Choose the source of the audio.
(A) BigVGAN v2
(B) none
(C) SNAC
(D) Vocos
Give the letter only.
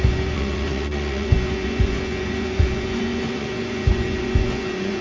D